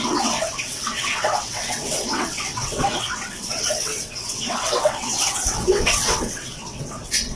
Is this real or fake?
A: fake